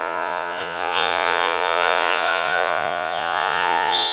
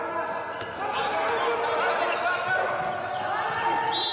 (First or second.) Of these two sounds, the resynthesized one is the first